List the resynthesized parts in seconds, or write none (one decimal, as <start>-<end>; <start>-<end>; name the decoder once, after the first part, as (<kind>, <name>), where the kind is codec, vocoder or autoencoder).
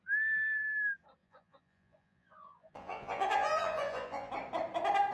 1.2-4.3 (vocoder, Vocos)